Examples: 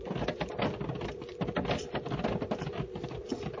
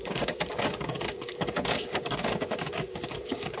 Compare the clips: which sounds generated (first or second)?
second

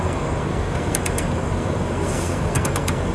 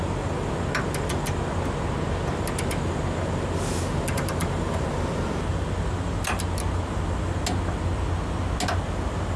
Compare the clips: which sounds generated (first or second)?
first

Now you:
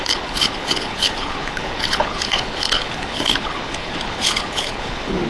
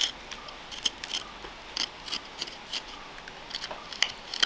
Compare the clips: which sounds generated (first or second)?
first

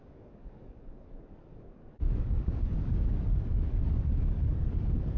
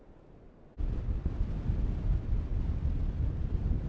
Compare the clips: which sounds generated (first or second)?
first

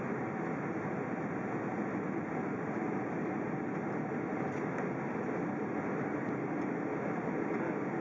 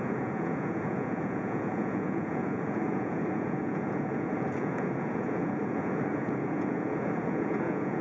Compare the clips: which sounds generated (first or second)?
second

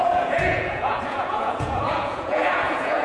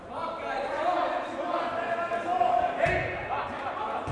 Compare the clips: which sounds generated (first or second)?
first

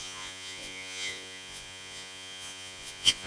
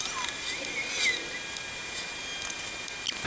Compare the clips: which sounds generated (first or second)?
first